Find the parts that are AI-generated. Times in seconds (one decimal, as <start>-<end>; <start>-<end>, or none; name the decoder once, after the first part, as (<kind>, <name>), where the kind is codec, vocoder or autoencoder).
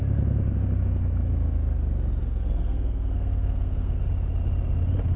2.2-4.1 (codec, SNAC)